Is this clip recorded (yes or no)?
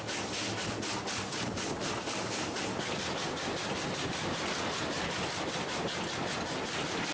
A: yes